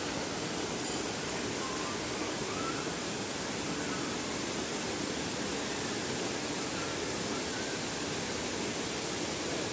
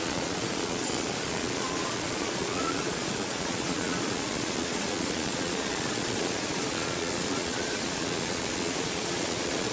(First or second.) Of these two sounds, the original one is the first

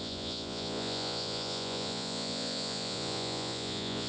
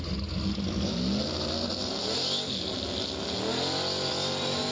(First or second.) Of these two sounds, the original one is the second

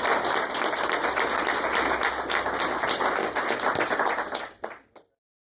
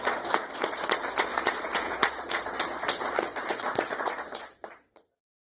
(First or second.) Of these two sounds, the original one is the first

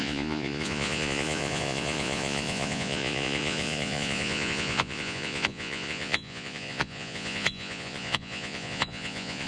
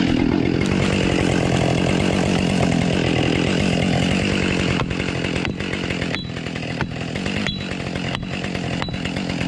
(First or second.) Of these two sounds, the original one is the second